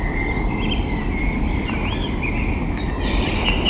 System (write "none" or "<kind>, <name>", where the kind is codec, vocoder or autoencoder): none